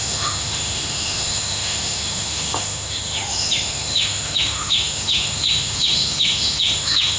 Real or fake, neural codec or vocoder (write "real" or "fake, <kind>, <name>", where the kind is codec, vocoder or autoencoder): fake, autoencoder, DAC-VAE